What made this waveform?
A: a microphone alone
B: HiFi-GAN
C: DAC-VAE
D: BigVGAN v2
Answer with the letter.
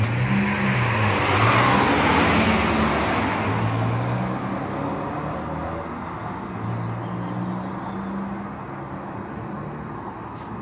A